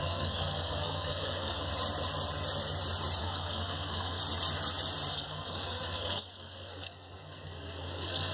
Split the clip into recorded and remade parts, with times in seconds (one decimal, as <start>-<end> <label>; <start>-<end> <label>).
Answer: 0.0-1.7 remade; 1.7-3.2 recorded; 3.2-4.2 remade; 4.2-5.1 recorded; 5.1-8.3 remade